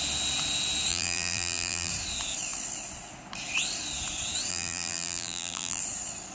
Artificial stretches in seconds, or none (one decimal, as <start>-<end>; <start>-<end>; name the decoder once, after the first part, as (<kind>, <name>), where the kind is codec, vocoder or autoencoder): 0.9-1.9 (vocoder, BigVGAN v2); 4.5-5.8